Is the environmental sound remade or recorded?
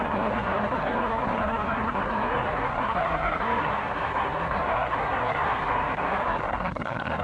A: remade